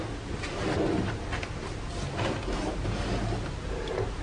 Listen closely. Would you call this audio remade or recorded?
recorded